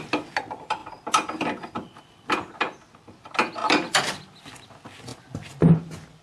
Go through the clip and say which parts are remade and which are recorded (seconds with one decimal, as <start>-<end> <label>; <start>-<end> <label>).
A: 0.0-0.8 recorded; 0.8-2.5 remade; 2.5-3.6 recorded; 3.6-4.1 remade; 4.1-6.2 recorded